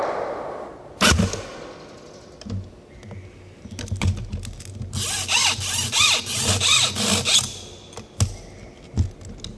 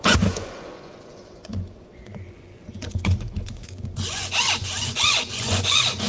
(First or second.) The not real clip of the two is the second